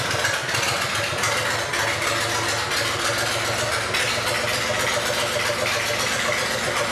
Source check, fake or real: real